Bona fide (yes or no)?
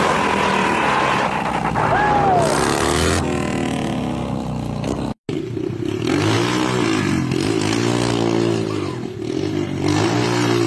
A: yes